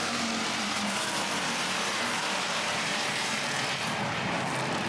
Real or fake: fake